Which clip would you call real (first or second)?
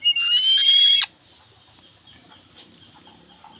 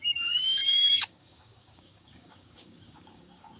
first